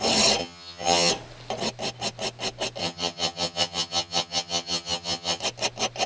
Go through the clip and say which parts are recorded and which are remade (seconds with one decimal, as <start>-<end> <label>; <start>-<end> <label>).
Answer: 0.0-0.4 recorded; 0.4-1.1 remade; 1.1-2.8 recorded; 2.8-5.4 remade; 5.4-6.1 recorded